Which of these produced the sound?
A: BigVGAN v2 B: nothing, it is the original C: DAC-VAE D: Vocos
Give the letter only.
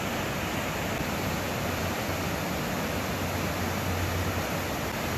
B